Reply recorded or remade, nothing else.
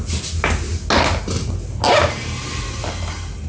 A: recorded